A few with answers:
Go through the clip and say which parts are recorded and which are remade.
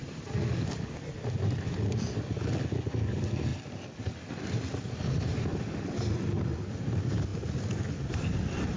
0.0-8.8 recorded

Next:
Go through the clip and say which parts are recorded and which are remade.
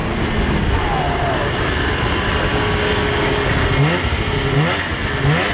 0.0-2.5 recorded; 2.5-3.6 remade; 3.6-5.5 recorded